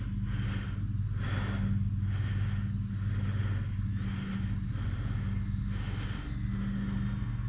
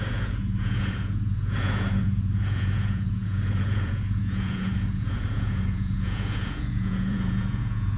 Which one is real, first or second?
first